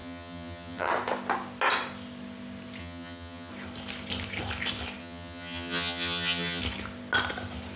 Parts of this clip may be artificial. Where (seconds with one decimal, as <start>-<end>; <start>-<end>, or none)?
0.0-0.9; 2.8-3.5; 5.0-6.6